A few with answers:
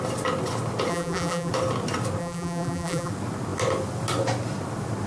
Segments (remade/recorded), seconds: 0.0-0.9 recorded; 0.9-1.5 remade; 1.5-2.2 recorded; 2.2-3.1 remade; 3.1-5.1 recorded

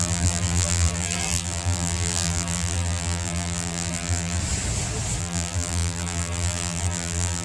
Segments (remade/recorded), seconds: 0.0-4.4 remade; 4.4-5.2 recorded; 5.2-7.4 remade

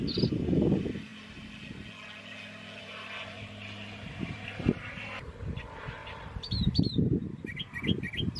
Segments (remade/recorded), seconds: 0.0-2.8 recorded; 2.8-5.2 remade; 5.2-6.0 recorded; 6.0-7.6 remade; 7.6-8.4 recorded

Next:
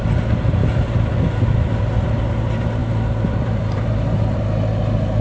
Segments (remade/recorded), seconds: 0.0-0.6 recorded; 0.6-1.8 remade; 1.8-2.8 recorded; 2.8-4.4 remade; 4.4-5.2 recorded

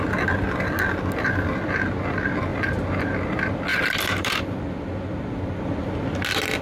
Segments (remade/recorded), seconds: 0.0-2.5 recorded; 2.5-3.1 remade; 3.1-3.7 recorded; 3.7-4.4 remade; 4.4-6.6 recorded

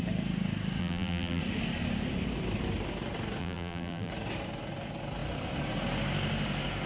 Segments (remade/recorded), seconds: 0.0-0.8 recorded; 0.8-1.4 remade; 1.4-3.4 recorded; 3.4-4.1 remade; 4.1-6.9 recorded

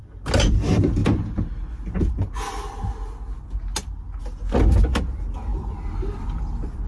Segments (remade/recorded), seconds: 0.0-5.5 recorded; 5.5-6.9 remade

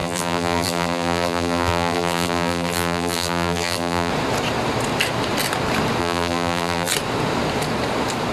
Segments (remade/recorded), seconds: 0.0-4.1 remade; 4.1-6.0 recorded; 6.0-6.9 remade; 6.9-8.3 recorded